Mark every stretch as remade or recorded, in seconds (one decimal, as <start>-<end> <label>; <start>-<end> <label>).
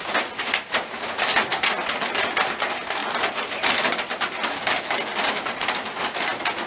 0.0-6.7 recorded